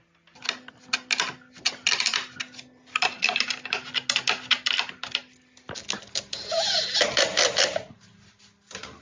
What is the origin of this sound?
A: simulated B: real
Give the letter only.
B